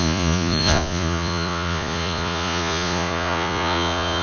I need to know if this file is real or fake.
fake